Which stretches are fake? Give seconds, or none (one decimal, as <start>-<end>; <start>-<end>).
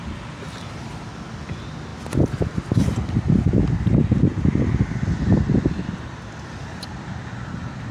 none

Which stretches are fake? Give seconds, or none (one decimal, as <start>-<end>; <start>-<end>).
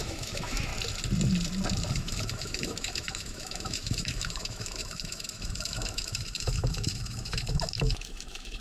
0.0-0.7; 1.9-8.6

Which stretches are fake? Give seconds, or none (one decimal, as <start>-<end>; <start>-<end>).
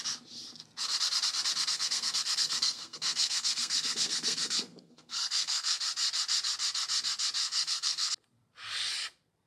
1.7-5.8; 7.4-8.1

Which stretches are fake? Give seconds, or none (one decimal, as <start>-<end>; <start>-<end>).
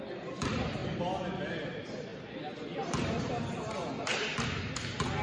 none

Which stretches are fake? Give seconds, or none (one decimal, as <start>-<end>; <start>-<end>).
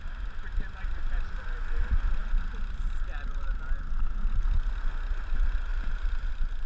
5.7-6.3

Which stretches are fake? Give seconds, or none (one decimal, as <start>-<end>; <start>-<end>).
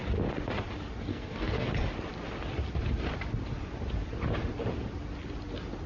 1.1-1.7